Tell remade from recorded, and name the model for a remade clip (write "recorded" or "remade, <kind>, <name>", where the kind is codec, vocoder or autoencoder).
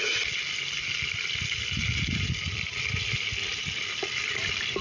recorded